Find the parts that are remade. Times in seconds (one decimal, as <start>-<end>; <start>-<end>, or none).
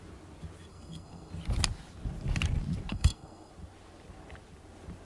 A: 0.7-1.3; 2.9-3.5